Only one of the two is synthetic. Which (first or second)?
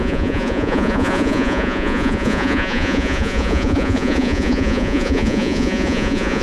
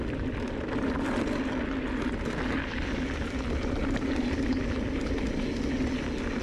first